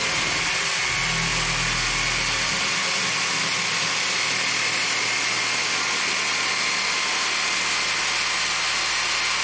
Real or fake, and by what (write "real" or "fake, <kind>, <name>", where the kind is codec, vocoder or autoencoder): real